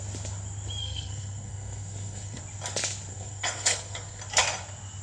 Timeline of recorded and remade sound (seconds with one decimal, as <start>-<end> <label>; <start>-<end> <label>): 0.0-0.8 recorded; 0.8-2.4 remade; 2.4-3.1 recorded; 3.1-4.2 remade; 4.2-5.0 recorded